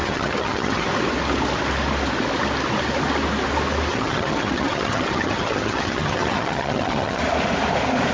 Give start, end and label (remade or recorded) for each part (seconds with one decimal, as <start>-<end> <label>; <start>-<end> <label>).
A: 0.0-0.9 remade; 0.9-3.9 recorded; 3.9-7.2 remade; 7.2-8.1 recorded